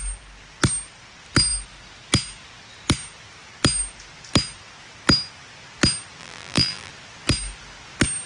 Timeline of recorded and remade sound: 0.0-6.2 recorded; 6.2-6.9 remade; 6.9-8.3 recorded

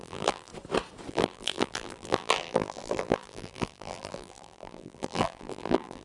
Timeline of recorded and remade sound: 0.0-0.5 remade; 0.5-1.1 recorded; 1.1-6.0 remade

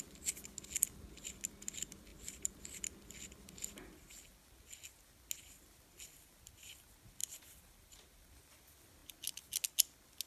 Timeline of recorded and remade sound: 0.0-2.1 recorded; 2.1-2.6 remade; 2.6-7.2 recorded; 7.2-8.3 remade; 8.3-10.3 recorded

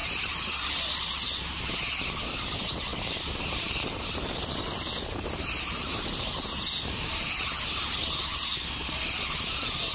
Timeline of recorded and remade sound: 0.0-9.9 remade

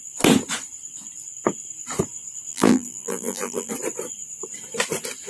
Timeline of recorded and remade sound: 0.0-2.5 recorded; 2.5-3.7 remade; 3.7-5.3 recorded

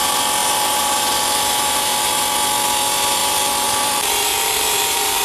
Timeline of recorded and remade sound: 0.0-0.4 recorded; 0.4-2.1 remade; 2.1-3.2 recorded; 3.2-5.2 remade